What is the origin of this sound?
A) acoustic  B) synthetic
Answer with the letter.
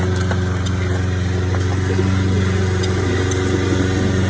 A